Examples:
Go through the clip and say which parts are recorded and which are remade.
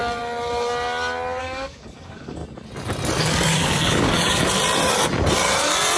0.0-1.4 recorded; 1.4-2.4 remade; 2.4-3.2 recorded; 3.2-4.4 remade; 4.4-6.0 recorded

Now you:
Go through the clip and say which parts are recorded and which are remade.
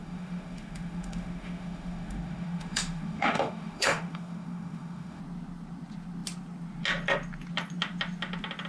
0.0-5.2 remade; 5.2-8.7 recorded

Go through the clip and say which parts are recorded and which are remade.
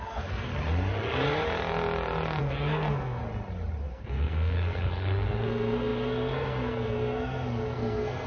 0.0-0.5 remade; 0.5-2.4 recorded; 2.4-3.2 remade; 3.2-3.9 recorded; 3.9-8.3 remade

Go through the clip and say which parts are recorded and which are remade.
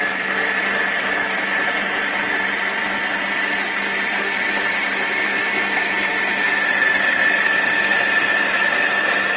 0.0-9.4 recorded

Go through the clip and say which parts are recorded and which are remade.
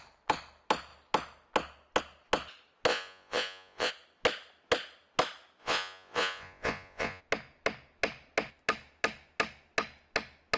0.0-2.9 recorded; 2.9-3.9 remade; 3.9-5.6 recorded; 5.6-7.2 remade; 7.2-10.6 recorded